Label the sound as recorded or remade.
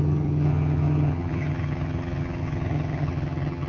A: remade